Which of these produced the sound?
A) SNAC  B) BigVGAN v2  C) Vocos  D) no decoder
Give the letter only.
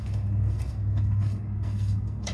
A